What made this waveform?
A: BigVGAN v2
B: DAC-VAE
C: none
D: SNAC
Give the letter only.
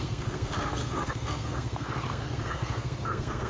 D